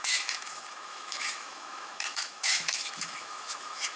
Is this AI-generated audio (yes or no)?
yes